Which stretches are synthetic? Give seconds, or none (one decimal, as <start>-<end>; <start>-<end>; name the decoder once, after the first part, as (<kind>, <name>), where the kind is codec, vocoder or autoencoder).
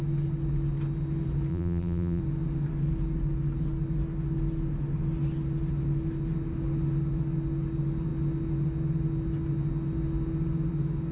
1.5-2.2 (vocoder, BigVGAN v2)